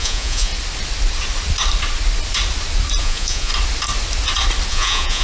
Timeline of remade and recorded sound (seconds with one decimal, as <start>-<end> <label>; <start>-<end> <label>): 0.0-0.5 remade; 0.5-3.0 recorded; 3.0-3.5 remade; 3.5-4.7 recorded; 4.7-5.2 remade